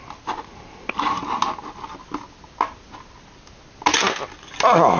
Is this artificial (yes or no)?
no